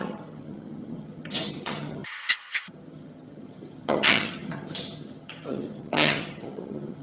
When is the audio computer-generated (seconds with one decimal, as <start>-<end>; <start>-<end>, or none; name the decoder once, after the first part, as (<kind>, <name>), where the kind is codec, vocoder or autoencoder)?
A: 0.0-7.0 (vocoder, HiFi-GAN)

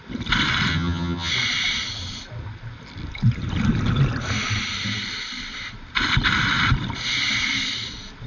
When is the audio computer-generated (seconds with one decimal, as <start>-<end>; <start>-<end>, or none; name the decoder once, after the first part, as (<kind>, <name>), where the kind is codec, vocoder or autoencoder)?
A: 0.7-1.3 (vocoder, HiFi-GAN)

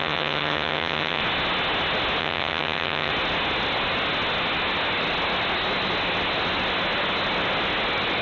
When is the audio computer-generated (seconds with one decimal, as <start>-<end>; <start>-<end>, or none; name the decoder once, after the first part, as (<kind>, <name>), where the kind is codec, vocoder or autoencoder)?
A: 0.0-1.2 (vocoder, HiFi-GAN); 2.2-3.1

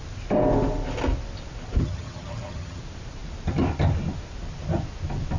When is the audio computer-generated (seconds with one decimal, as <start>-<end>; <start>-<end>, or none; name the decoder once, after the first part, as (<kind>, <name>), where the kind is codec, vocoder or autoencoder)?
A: 1.8-2.8 (vocoder, HiFi-GAN)

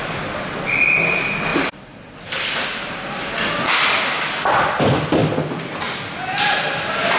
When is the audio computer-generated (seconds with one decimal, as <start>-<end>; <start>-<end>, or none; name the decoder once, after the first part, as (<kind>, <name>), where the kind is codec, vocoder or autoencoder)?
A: none

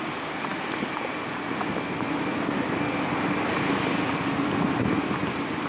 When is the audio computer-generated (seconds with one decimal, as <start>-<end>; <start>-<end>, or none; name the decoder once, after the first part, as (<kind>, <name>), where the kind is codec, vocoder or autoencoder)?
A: none

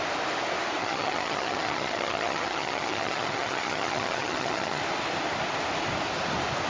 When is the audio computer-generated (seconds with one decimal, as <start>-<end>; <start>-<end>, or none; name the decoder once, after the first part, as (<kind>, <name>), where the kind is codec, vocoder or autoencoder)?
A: 0.8-4.8 (vocoder, HiFi-GAN)